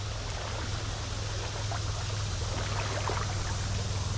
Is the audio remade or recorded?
recorded